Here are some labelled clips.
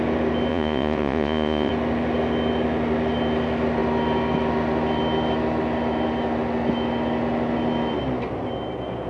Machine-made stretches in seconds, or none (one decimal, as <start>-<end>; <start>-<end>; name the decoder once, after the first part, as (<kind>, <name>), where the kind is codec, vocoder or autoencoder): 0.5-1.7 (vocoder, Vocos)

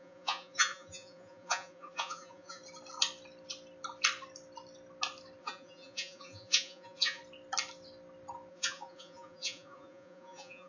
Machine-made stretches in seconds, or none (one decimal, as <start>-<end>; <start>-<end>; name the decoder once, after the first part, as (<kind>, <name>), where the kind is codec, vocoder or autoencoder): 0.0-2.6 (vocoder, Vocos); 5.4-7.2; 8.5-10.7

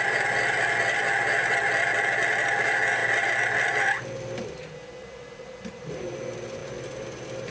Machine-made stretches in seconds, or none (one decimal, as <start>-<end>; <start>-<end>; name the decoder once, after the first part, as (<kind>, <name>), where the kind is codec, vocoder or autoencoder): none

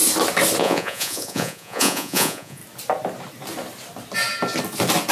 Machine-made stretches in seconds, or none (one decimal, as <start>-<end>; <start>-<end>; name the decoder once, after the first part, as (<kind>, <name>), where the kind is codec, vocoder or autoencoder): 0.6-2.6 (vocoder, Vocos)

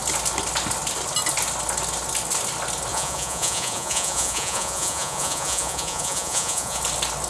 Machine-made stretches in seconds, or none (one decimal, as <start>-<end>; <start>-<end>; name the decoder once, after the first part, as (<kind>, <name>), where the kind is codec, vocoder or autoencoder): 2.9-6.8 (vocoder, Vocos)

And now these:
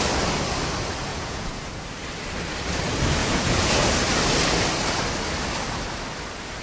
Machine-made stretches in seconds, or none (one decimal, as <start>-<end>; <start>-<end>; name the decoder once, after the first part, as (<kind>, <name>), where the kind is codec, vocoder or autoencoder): 1.1-1.7 (vocoder, Vocos); 3.2-3.8

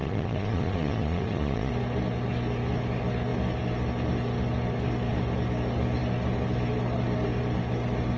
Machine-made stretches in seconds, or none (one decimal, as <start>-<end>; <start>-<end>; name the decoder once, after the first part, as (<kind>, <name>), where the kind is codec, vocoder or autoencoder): 0.0-1.7 (vocoder, Vocos)

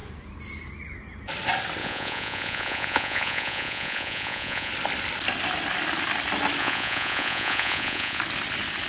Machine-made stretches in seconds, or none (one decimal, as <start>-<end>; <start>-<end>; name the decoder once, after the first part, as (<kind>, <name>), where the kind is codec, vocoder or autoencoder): 1.8-4.7 (vocoder, Vocos); 6.6-8.2